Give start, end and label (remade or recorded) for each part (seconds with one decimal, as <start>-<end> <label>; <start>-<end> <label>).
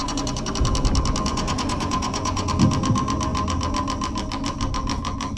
0.0-0.5 remade; 0.5-1.3 recorded; 1.3-2.5 remade; 2.5-5.4 recorded